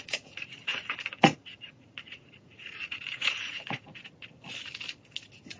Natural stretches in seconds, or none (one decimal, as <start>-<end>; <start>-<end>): 3.9-5.6

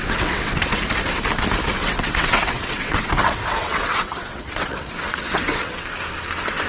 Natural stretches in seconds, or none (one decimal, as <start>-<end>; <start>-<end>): 0.8-1.8; 5.8-6.7

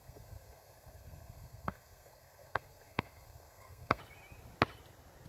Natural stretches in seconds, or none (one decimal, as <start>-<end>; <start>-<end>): 4.0-5.3

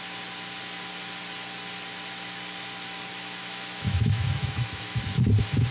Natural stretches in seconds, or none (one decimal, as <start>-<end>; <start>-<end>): 0.0-3.4; 5.0-5.7